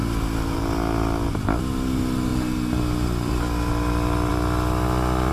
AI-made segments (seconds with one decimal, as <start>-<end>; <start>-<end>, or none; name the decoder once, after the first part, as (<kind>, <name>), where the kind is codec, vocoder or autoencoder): none